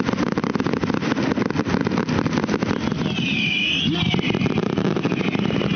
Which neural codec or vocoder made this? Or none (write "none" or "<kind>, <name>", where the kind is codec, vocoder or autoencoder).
none